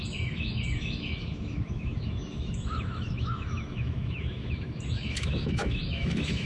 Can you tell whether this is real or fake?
fake